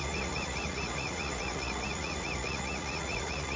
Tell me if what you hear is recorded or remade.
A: remade